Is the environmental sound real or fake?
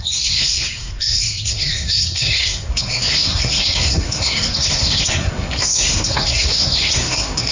fake